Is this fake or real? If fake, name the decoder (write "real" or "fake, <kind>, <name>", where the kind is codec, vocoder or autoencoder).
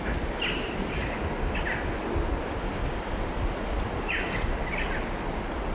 real